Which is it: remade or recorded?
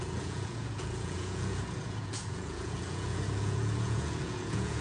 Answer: remade